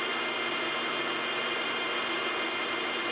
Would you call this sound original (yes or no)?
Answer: yes